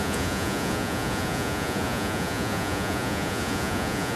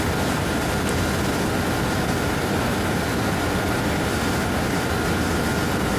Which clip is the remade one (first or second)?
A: first